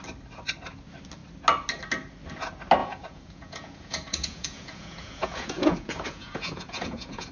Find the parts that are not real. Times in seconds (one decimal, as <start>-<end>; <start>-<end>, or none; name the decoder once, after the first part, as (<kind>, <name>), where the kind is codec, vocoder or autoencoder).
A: 2.8-7.3 (vocoder, Vocos)